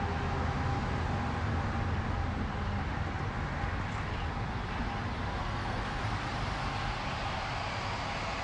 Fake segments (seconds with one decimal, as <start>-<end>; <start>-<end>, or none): 5.4-6.0